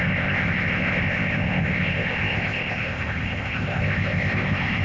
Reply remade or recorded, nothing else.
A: remade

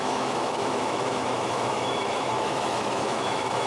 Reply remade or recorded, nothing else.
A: remade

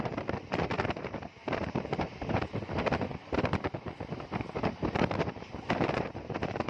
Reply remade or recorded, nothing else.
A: remade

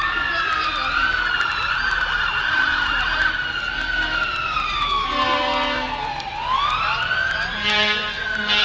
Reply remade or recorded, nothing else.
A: recorded